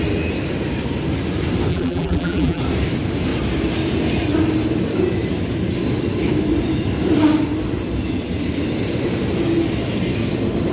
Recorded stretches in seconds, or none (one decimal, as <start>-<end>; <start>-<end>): 0.0-1.7; 2.6-10.7